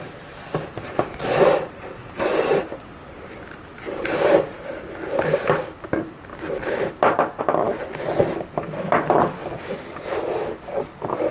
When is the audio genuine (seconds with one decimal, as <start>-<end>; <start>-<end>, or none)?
0.0-11.3